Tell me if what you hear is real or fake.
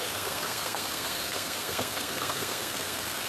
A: fake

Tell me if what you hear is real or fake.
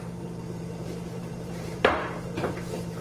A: fake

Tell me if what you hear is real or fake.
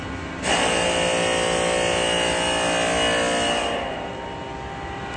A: real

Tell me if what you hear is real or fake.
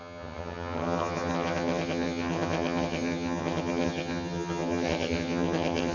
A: fake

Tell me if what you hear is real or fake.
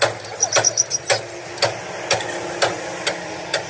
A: real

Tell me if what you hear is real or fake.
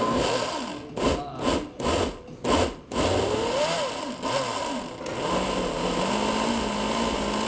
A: real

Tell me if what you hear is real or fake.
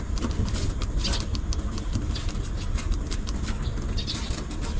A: real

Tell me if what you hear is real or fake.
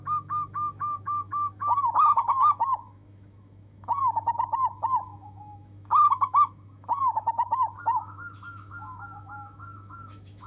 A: fake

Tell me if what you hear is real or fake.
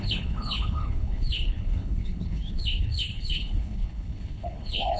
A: fake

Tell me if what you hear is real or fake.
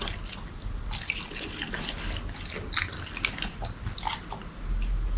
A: real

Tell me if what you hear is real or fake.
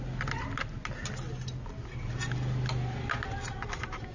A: real